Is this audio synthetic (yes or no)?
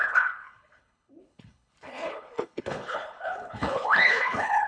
yes